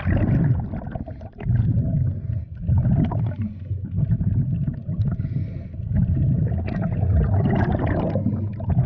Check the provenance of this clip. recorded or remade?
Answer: recorded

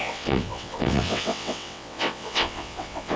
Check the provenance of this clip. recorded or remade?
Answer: remade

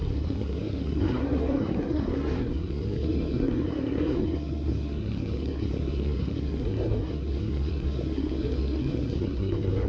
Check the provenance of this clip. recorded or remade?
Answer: remade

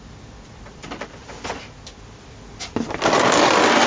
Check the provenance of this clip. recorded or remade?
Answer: recorded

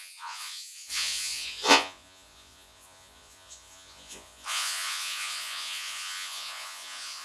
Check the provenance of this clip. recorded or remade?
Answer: remade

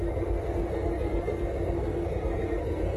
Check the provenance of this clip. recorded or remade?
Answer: remade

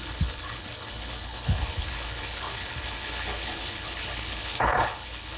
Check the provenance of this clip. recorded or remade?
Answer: remade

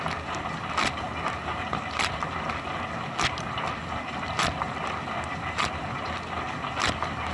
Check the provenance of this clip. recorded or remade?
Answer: recorded